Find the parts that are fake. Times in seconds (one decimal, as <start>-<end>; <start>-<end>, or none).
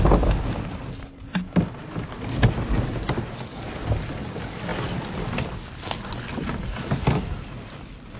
none